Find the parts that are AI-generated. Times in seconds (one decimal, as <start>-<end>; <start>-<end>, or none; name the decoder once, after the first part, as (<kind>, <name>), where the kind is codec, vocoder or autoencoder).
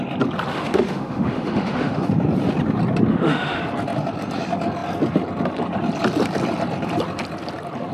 0.5-2.1 (autoencoder, DAC-VAE); 3.1-3.6